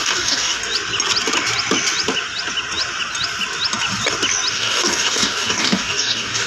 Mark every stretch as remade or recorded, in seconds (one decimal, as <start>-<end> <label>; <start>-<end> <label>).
0.0-0.6 remade; 0.6-4.5 recorded; 4.5-6.5 remade